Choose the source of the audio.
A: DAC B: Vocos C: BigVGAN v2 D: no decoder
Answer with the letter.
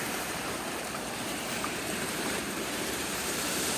C